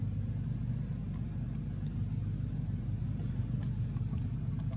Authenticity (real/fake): real